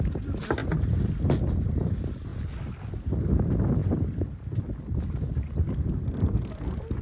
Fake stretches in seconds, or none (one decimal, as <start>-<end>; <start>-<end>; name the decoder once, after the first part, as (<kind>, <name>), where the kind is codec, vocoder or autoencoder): none